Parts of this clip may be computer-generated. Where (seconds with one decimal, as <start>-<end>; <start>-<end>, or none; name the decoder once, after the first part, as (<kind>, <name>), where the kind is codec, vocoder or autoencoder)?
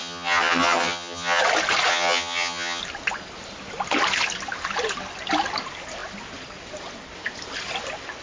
0.0-1.4 (vocoder, HiFi-GAN); 1.9-2.8